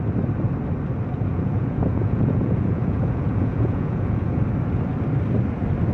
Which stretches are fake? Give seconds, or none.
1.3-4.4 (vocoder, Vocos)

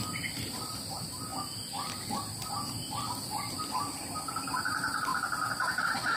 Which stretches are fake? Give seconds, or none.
0.0-1.3 (vocoder, BigVGAN v2); 4.6-5.1

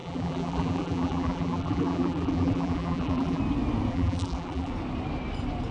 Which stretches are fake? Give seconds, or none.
0.0-3.4 (vocoder, BigVGAN v2); 3.9-4.7